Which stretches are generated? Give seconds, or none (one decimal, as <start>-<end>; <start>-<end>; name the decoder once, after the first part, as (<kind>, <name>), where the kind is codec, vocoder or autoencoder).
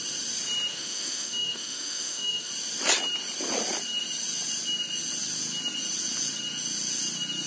0.7-2.5 (autoencoder, DAC-VAE)